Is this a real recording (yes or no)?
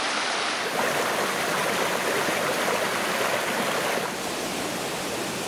yes